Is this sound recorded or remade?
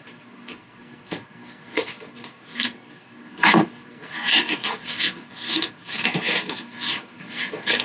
remade